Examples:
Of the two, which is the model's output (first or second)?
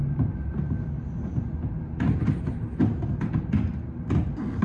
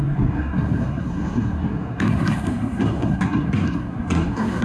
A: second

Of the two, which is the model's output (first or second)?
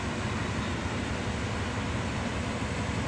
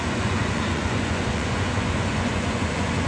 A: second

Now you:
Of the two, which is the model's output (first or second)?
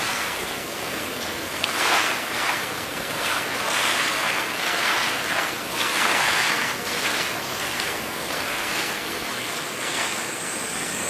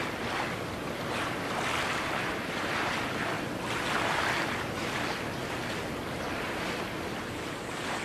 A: first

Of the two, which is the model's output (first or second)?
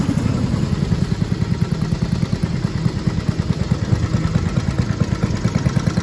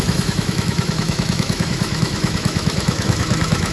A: second